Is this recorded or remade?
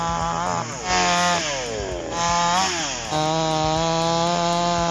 recorded